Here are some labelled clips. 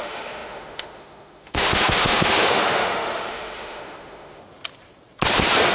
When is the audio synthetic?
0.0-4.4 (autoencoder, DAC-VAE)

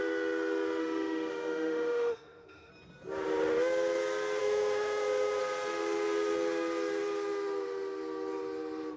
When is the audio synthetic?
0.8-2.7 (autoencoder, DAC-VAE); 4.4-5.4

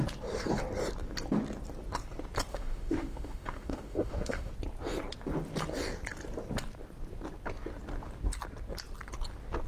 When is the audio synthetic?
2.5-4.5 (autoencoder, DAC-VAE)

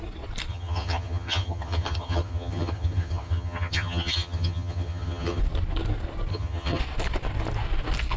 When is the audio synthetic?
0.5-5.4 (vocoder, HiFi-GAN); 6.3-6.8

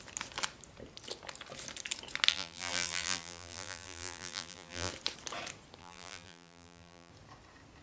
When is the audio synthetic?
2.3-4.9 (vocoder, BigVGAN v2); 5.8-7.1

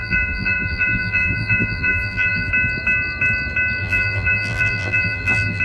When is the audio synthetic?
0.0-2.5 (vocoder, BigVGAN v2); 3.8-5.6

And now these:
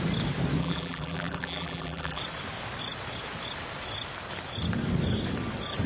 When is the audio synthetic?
0.6-2.2 (vocoder, BigVGAN v2)